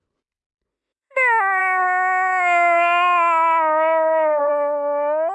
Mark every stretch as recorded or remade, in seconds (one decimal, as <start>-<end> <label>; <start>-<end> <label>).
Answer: 0.0-0.7 recorded; 0.7-1.6 remade; 1.6-2.3 recorded; 2.3-4.5 remade; 4.5-5.3 recorded